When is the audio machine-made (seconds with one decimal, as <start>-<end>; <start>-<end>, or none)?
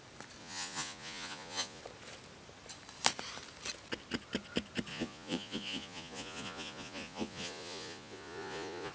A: 0.4-1.8; 4.9-8.9